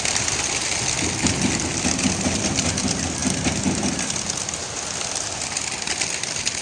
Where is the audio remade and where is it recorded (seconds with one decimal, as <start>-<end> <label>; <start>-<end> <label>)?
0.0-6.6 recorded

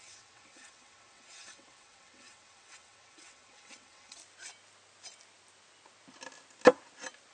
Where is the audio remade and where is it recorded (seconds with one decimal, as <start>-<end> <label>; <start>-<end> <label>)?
0.0-4.2 remade; 4.2-7.3 recorded

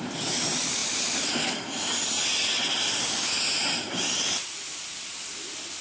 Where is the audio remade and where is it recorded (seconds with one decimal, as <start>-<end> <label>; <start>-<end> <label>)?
0.0-5.8 recorded

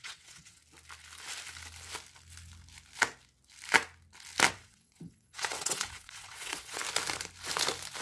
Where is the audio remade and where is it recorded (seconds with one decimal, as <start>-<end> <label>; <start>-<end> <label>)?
0.0-0.6 remade; 0.6-4.5 recorded; 4.5-6.8 remade; 6.8-8.0 recorded